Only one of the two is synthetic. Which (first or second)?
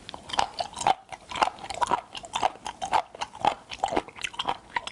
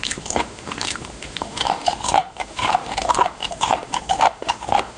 second